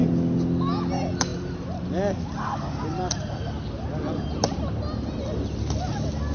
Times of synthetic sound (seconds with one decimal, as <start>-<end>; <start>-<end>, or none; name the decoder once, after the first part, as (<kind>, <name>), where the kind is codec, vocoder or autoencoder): none